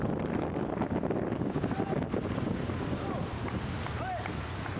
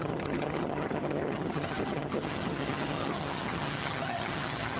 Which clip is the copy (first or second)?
second